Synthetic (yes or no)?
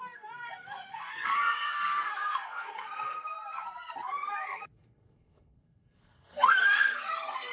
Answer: yes